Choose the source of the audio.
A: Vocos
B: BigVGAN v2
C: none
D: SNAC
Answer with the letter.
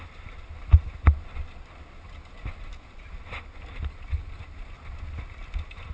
C